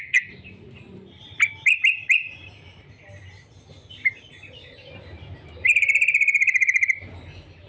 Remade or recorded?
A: recorded